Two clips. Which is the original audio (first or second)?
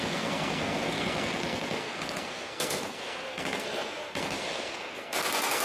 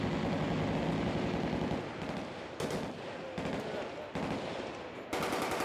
second